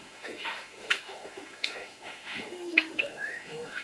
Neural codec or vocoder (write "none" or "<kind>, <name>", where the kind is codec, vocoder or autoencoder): autoencoder, DAC-VAE